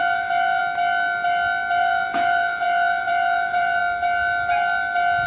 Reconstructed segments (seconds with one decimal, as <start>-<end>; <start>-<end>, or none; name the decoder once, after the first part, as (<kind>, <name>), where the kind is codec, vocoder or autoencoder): 0.0-0.6 (vocoder, Vocos); 1.8-3.8